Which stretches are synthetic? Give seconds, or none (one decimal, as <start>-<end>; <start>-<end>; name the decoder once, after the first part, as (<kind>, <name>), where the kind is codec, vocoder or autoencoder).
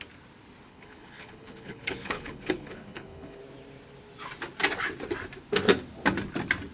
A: 0.7-3.4 (codec, HILCodec)